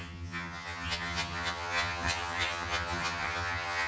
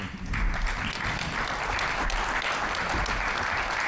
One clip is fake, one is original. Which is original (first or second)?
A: second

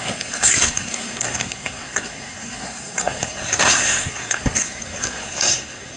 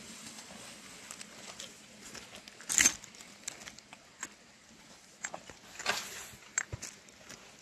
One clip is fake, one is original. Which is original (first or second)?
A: second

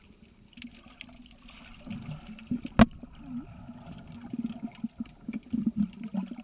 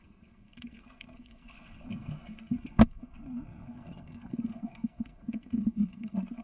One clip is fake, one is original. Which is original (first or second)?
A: first